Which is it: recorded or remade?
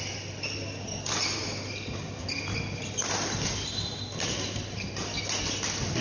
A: recorded